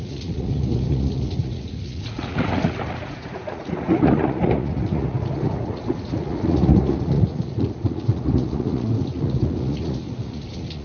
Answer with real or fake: fake